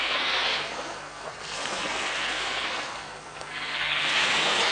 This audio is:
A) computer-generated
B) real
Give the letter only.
A